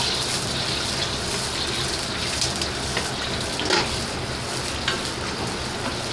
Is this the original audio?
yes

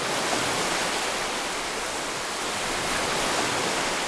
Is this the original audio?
yes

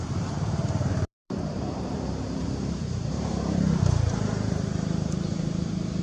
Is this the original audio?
no